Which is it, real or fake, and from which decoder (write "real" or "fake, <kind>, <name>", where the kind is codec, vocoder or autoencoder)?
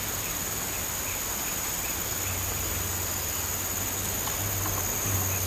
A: real